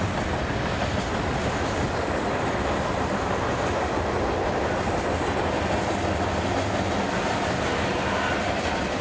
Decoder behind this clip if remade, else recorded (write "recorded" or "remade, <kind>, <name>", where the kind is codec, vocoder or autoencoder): recorded